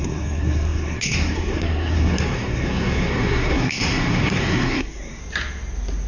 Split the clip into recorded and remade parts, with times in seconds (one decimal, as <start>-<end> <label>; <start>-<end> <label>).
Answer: 0.0-5.2 remade; 5.2-6.1 recorded